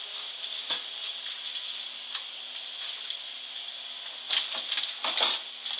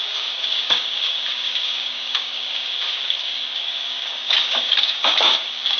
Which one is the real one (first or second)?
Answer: first